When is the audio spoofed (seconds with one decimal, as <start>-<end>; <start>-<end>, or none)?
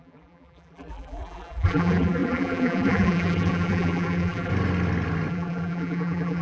0.0-4.5; 5.3-6.4